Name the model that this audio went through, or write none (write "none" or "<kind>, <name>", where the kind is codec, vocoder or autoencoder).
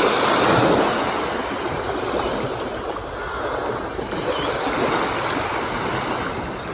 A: none